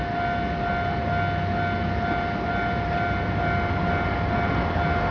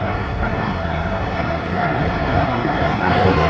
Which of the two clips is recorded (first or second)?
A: first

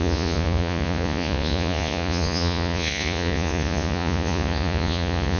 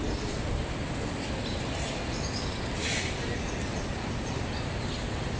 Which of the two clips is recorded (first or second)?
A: second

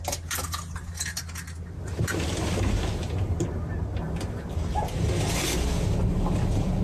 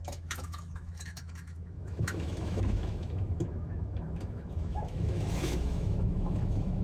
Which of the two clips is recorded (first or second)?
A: first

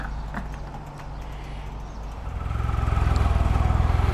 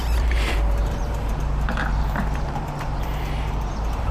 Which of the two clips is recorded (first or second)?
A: first